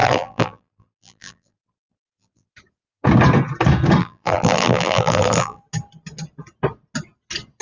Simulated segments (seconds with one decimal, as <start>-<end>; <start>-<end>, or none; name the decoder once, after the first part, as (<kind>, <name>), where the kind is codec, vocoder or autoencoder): 0.0-2.5 (vocoder, BigVGAN v2); 4.0-5.6